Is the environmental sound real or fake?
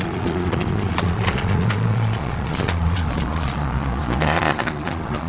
fake